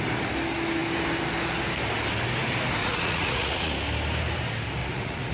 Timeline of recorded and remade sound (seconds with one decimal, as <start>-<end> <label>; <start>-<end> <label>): 0.0-2.8 recorded; 2.8-3.7 remade; 3.7-4.8 recorded; 4.8-5.3 remade